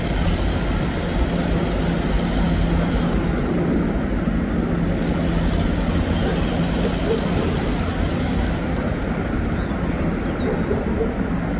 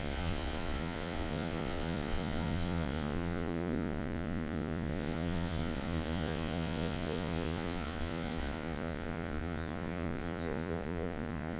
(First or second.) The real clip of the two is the first